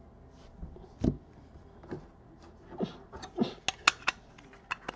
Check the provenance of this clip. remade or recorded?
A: recorded